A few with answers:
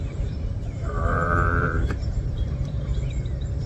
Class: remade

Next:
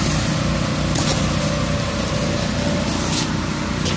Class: recorded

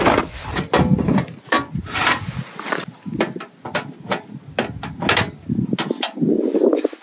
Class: recorded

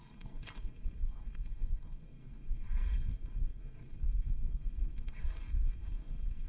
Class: remade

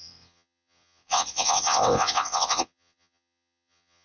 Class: remade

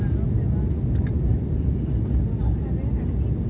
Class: recorded